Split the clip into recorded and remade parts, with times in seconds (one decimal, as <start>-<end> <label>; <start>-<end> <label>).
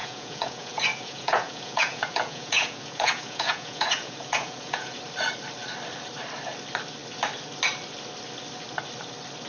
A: 0.0-5.0 remade; 5.0-9.5 recorded